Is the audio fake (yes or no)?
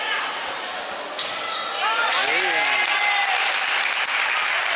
no